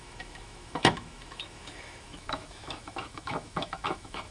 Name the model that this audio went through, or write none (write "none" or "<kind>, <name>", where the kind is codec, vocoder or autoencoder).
autoencoder, DAC-VAE